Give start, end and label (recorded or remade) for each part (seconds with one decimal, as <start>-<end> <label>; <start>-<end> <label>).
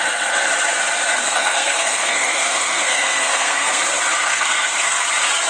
0.0-1.2 recorded; 1.2-3.8 remade; 3.8-4.2 recorded; 4.2-5.0 remade; 5.0-5.5 recorded